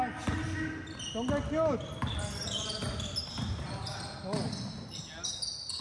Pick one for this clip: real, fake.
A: real